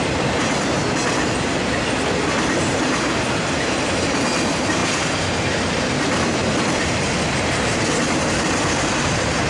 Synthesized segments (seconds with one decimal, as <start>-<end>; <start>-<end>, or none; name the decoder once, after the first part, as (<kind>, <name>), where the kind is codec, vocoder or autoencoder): 0.0-0.8 (vocoder, BigVGAN v2); 2.5-4.8; 5.7-6.4; 9.0-9.5